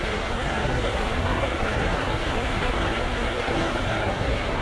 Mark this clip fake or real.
fake